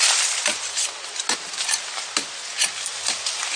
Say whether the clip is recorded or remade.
recorded